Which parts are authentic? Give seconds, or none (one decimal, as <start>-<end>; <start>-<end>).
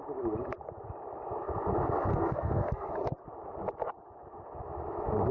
0.0-2.1; 2.9-5.3